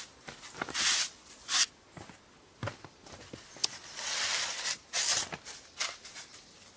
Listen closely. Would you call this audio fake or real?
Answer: fake